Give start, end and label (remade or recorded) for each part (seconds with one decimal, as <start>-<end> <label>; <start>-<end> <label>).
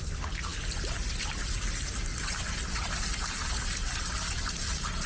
0.0-5.1 recorded